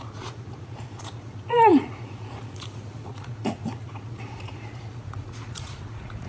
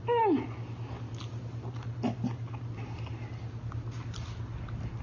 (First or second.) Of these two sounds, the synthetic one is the first